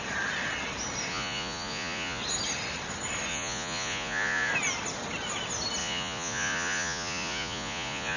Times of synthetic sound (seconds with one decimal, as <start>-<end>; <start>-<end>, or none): 1.1-2.2; 3.3-4.5; 5.8-8.2